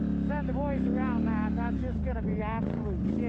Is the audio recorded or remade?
recorded